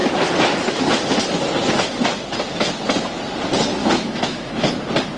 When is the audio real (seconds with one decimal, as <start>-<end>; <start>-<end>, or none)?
0.0-3.8; 4.7-5.2